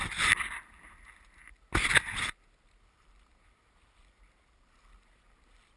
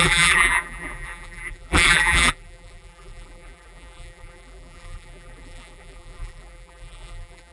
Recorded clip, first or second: first